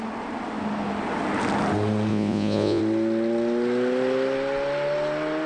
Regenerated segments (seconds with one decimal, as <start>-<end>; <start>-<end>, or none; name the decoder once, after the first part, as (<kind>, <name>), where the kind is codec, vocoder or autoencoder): 2.1-2.8 (vocoder, Vocos)